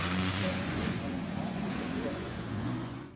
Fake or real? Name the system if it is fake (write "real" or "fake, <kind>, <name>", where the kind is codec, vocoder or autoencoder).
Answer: fake, vocoder, Vocos